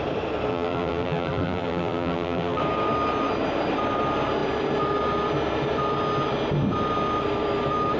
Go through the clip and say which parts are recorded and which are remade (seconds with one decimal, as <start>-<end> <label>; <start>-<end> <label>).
0.0-0.5 recorded; 0.5-2.6 remade; 2.6-8.0 recorded